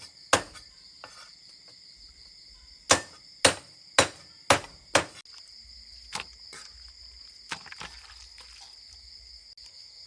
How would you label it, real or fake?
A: real